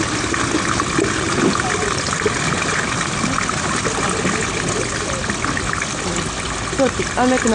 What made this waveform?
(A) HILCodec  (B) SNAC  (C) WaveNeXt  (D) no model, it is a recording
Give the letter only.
D